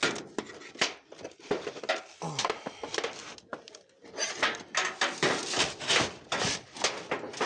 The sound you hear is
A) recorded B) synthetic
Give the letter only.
A